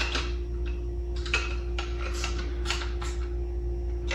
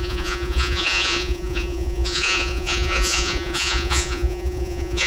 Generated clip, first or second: second